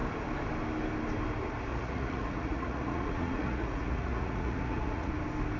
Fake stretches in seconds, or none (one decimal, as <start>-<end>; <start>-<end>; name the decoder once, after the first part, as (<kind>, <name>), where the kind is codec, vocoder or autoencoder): 1.7-5.1 (vocoder, Vocos)